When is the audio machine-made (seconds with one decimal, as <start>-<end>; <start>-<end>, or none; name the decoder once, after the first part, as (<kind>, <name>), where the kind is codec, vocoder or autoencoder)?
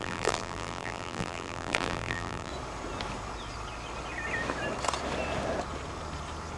0.0-2.5 (vocoder, BigVGAN v2)